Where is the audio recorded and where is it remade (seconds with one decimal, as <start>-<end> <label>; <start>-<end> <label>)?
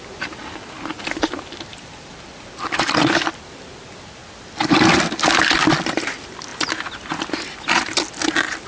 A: 0.0-1.7 recorded; 1.7-3.4 remade; 3.4-8.7 recorded